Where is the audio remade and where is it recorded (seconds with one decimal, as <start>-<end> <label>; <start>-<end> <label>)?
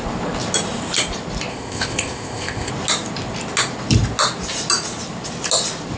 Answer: 0.0-1.5 recorded; 1.5-2.7 remade; 2.7-6.0 recorded